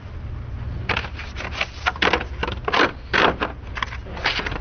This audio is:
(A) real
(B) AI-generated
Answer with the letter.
A